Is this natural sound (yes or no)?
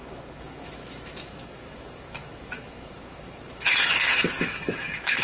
no